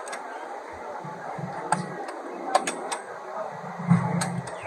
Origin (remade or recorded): recorded